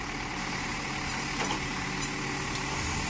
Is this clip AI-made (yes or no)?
no